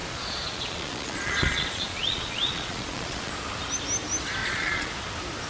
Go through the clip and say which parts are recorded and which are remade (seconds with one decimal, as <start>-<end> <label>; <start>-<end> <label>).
0.0-3.3 remade; 3.3-4.4 recorded; 4.4-4.9 remade; 4.9-5.5 recorded